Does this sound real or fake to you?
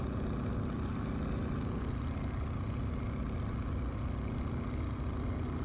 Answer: real